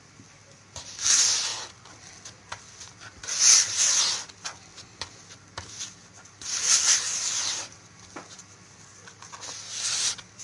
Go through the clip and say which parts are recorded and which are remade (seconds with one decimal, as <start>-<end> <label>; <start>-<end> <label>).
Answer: 0.0-10.4 recorded

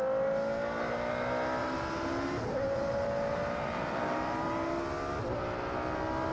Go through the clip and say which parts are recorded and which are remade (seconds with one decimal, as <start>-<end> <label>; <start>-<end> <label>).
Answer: 0.0-1.6 recorded; 1.6-4.7 remade; 4.7-6.3 recorded

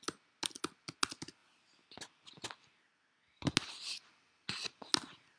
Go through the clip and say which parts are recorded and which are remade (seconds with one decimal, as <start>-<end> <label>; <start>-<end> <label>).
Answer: 0.0-5.4 recorded

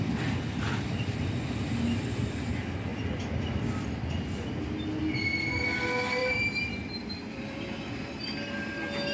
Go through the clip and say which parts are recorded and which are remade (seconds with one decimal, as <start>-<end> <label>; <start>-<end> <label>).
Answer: 0.0-6.2 recorded; 6.2-7.1 remade; 7.1-9.1 recorded